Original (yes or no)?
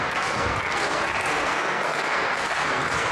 no